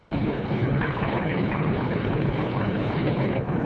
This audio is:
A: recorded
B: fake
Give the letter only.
B